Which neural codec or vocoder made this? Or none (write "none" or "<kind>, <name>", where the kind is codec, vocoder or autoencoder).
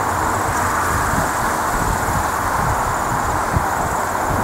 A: none